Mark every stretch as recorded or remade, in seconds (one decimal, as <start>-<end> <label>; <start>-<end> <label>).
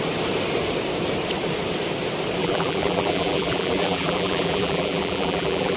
0.0-2.4 recorded; 2.4-5.8 remade